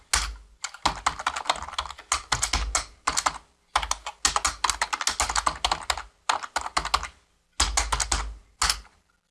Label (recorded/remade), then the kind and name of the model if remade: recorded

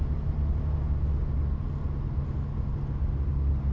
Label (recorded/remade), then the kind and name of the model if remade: recorded